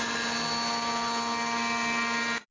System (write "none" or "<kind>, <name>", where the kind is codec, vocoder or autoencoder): none